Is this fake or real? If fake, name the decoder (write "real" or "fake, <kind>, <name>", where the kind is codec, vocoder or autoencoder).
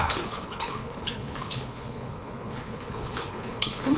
fake, codec, HILCodec